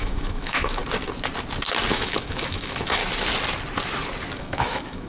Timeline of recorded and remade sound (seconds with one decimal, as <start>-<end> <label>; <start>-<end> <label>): 0.0-0.8 remade; 0.8-1.9 recorded; 1.9-3.0 remade; 3.0-4.4 recorded; 4.4-5.1 remade